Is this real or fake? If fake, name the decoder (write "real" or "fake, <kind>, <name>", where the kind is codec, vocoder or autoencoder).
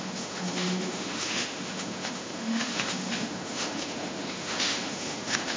fake, autoencoder, DAC-VAE